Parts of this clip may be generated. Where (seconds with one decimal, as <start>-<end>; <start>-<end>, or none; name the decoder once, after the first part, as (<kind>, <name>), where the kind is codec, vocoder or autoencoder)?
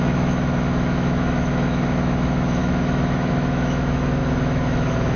0.0-5.2 (autoencoder, DAC-VAE)